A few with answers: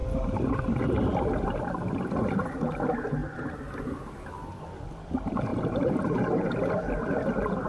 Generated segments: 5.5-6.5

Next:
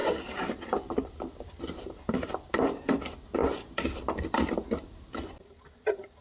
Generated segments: 0.0-1.1

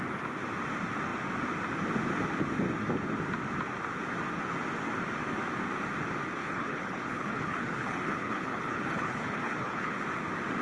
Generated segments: 6.4-10.0

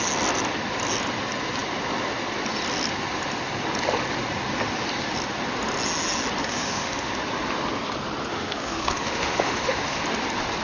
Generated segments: 6.4-7.1; 8.3-10.0